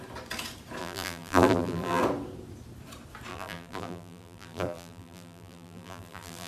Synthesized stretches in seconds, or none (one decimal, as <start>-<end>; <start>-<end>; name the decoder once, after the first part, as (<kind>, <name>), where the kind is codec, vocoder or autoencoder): 0.8-2.0 (vocoder, BigVGAN v2); 3.3-6.5